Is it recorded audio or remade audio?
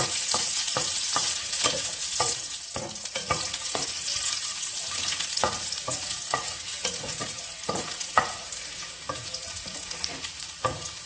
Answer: remade